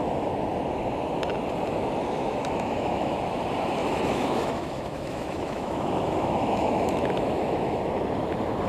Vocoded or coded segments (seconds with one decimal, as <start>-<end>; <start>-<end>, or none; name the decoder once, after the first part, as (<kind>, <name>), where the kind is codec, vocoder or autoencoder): 2.2-3.2 (autoencoder, DAC-VAE); 3.8-7.8